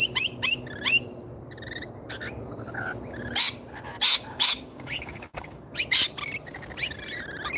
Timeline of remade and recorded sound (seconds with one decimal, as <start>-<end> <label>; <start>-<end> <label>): 0.0-4.1 recorded; 4.1-5.8 remade; 5.8-7.6 recorded